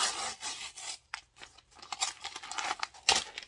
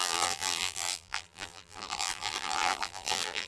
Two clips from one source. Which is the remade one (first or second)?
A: second